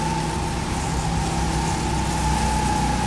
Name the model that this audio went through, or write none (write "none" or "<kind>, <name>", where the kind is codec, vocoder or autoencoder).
none